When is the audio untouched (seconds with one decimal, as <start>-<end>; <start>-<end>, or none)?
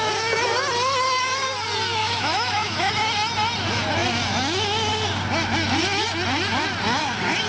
0.0-2.0; 2.9-7.5